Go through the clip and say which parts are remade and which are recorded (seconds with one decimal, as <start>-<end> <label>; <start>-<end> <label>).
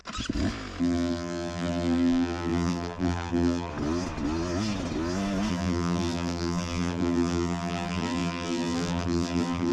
0.0-0.8 recorded; 0.8-3.7 remade; 3.7-5.5 recorded; 5.5-9.7 remade